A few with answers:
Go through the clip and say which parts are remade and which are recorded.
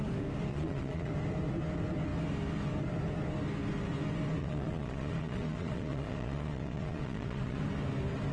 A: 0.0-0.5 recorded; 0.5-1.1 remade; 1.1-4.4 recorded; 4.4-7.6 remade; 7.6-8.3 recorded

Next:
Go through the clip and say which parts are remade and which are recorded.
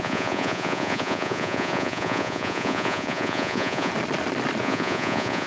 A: 0.0-3.9 remade; 3.9-4.6 recorded; 4.6-5.5 remade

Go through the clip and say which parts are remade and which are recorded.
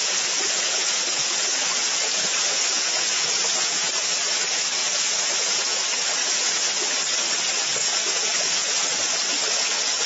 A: 0.0-3.9 remade; 3.9-4.8 recorded; 4.8-5.8 remade; 5.8-6.2 recorded; 6.2-6.7 remade; 6.7-7.8 recorded; 7.8-10.1 remade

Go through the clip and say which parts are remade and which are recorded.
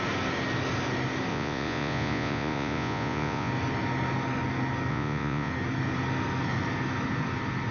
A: 0.0-1.3 recorded; 1.3-3.5 remade; 3.5-4.9 recorded; 4.9-5.5 remade; 5.5-7.7 recorded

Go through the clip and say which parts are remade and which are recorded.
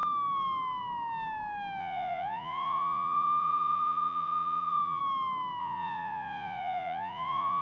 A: 0.0-1.8 recorded; 1.8-5.0 remade; 5.0-5.6 recorded; 5.6-7.6 remade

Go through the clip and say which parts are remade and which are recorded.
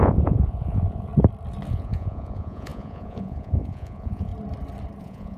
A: 0.0-1.1 remade; 1.1-1.7 recorded; 1.7-4.3 remade; 4.3-5.0 recorded; 5.0-5.4 remade